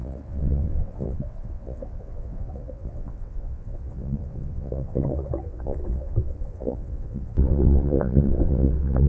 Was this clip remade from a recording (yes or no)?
yes